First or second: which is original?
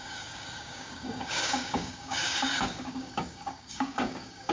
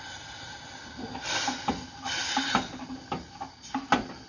second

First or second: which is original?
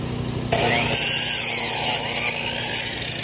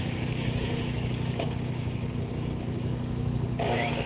first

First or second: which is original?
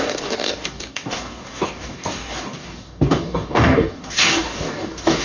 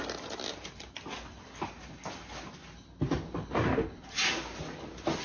second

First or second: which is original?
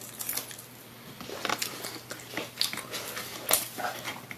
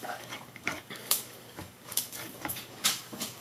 first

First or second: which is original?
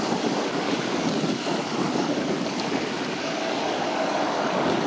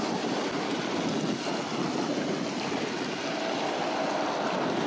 second